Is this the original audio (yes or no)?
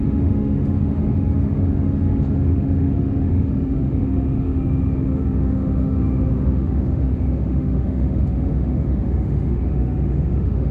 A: no